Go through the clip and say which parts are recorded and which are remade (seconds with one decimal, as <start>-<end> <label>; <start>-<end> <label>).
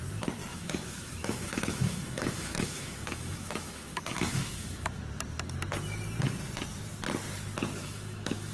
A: 0.0-0.5 recorded; 0.5-5.0 remade; 5.0-7.8 recorded; 7.8-8.5 remade